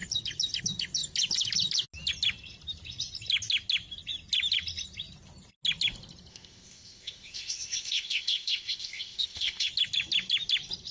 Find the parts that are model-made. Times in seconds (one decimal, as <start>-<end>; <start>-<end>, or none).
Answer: 6.3-9.7